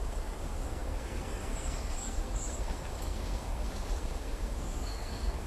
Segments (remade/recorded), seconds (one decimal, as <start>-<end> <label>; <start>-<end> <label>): 0.0-5.5 remade